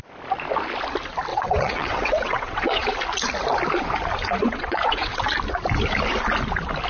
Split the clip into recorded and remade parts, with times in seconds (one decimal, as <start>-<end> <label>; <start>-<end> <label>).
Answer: 0.0-1.3 recorded; 1.3-2.9 remade; 2.9-4.4 recorded; 4.4-5.2 remade; 5.2-6.9 recorded